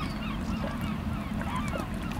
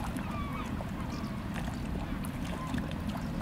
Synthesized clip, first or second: second